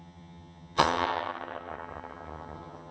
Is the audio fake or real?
fake